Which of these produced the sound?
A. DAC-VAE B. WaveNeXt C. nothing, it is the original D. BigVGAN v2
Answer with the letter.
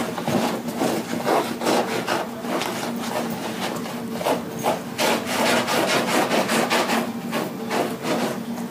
C